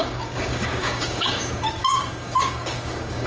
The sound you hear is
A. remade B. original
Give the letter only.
A